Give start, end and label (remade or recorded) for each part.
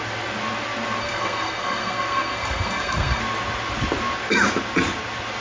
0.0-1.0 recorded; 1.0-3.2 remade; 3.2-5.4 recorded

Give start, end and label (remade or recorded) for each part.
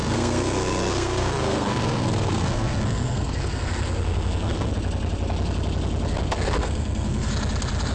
0.0-4.7 remade; 4.7-6.6 recorded; 6.6-7.3 remade; 7.3-7.9 recorded